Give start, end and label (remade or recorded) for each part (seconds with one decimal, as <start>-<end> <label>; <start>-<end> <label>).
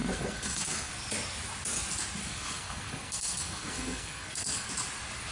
0.0-0.9 remade; 0.9-2.2 recorded; 2.2-4.7 remade; 4.7-5.3 recorded